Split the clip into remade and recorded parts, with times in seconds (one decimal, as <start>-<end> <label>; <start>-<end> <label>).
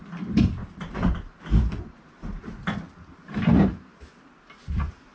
0.0-0.6 recorded; 0.6-2.4 remade; 2.4-3.5 recorded; 3.5-4.1 remade; 4.1-5.1 recorded